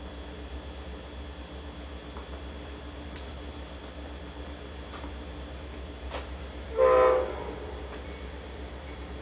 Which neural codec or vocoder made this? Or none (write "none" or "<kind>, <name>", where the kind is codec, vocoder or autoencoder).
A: none